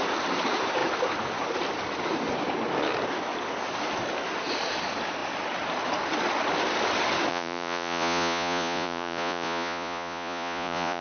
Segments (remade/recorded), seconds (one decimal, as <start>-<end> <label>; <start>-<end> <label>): 0.0-7.3 recorded; 7.3-11.0 remade